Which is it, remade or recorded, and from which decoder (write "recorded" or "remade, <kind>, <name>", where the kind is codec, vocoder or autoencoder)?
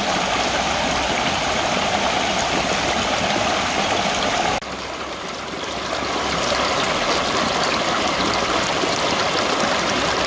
recorded